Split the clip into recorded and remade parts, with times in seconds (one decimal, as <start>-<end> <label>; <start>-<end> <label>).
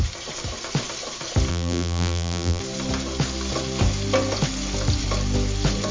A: 0.0-1.5 recorded; 1.5-2.6 remade; 2.6-5.9 recorded